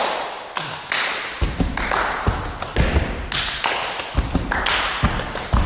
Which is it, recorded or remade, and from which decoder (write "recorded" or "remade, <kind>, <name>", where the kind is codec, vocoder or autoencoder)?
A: recorded